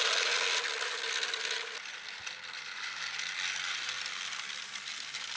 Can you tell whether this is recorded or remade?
recorded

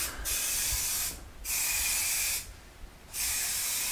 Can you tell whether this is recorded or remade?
recorded